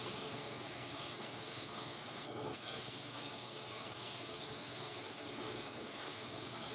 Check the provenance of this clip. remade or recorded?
remade